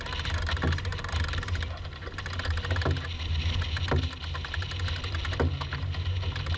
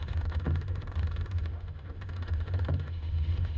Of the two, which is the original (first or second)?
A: first